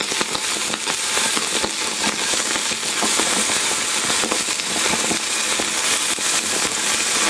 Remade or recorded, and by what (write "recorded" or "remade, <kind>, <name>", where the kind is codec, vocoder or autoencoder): remade, vocoder, BigVGAN v2